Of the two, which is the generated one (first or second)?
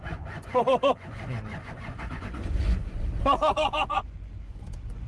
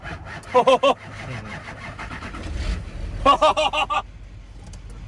first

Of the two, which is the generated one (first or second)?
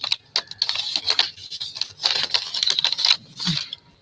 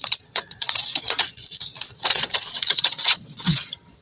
second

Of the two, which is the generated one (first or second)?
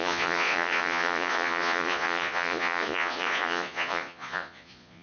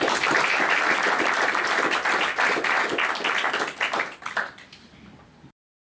first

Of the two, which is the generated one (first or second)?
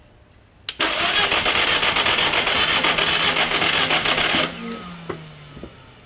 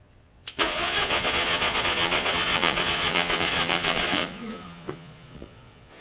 second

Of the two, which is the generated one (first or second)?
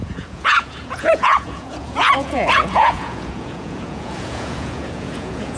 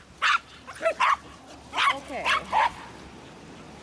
first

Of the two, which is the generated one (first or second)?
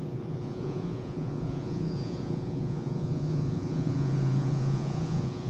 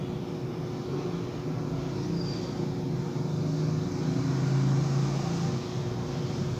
first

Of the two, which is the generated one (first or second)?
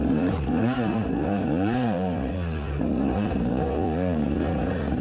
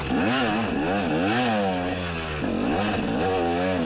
first